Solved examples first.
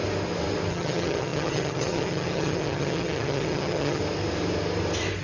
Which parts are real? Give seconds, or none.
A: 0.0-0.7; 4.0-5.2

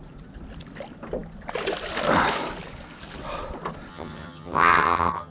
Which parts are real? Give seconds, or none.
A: 0.0-3.9

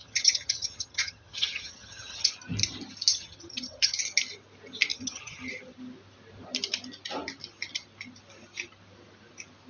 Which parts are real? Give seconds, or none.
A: 2.3-3.1; 4.0-4.9; 5.5-9.7

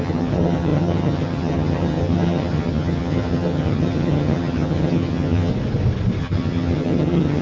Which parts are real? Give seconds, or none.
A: 5.5-6.2